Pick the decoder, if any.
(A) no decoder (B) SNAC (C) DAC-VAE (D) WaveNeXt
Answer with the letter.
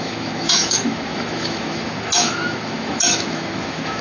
C